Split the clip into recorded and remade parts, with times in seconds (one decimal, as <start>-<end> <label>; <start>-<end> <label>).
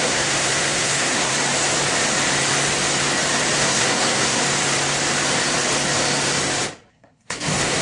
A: 0.0-1.3 remade; 1.3-3.6 recorded; 3.6-4.4 remade; 4.4-6.9 recorded; 6.9-7.8 remade